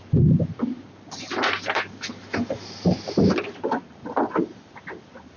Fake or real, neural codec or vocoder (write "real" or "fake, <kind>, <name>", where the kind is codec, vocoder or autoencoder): fake, vocoder, BigVGAN v2